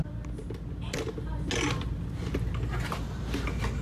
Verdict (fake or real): real